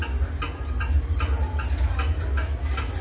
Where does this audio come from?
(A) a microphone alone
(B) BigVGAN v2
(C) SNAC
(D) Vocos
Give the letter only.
A